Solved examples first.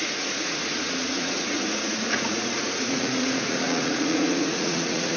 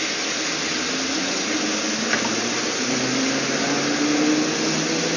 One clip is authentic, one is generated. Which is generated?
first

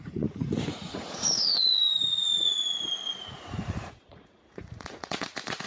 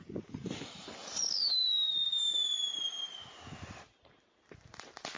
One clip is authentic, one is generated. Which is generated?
first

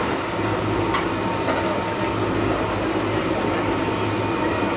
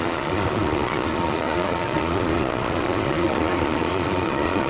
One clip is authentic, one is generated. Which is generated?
second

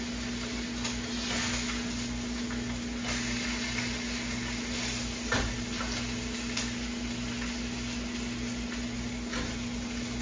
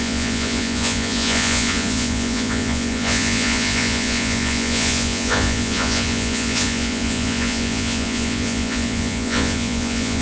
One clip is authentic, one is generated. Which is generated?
second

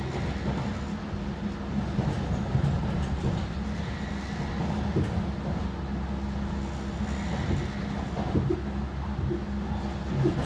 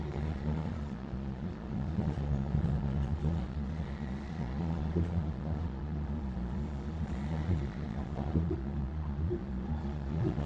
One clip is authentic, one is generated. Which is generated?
second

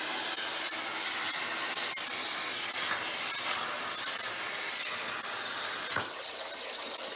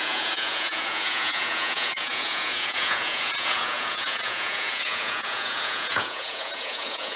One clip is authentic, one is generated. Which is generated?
second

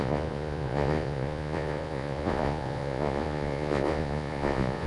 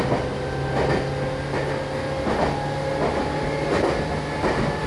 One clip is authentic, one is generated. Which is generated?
first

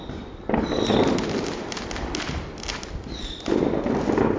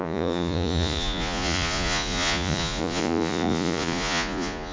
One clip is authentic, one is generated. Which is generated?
second